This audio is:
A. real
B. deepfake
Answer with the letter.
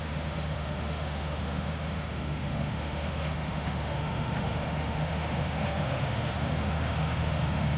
B